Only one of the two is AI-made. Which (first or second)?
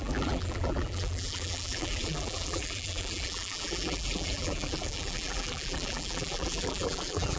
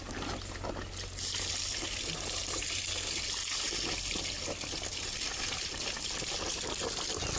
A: first